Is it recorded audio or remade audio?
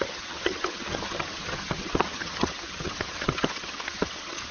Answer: remade